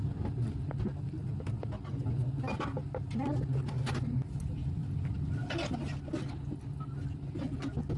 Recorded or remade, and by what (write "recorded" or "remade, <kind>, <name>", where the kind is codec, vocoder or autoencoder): recorded